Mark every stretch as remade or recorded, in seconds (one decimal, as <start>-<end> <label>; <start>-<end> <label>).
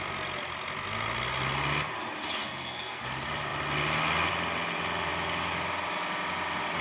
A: 0.0-2.4 recorded; 2.4-3.0 remade; 3.0-6.8 recorded